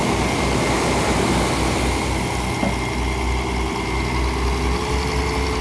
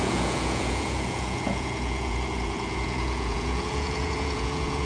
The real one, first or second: first